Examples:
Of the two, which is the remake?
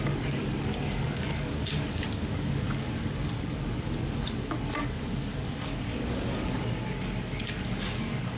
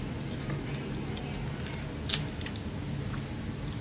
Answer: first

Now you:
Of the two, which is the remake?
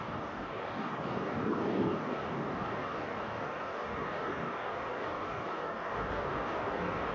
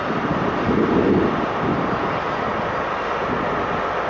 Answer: first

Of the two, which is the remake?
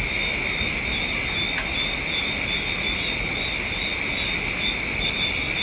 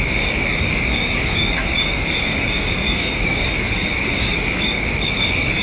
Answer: second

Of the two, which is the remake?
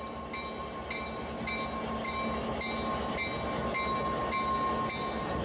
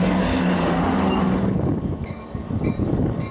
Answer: second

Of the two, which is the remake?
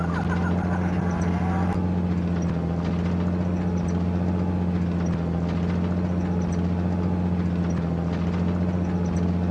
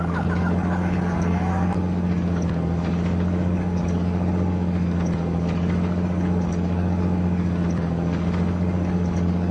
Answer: second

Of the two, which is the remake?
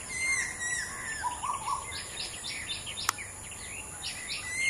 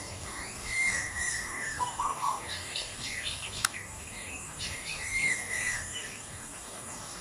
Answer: second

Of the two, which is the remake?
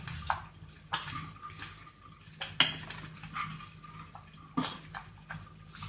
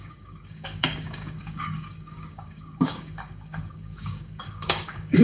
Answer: second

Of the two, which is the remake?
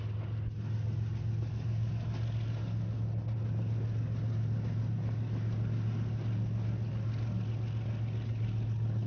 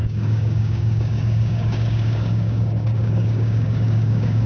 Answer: second